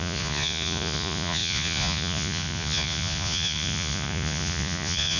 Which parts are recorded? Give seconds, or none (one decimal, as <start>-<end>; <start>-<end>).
none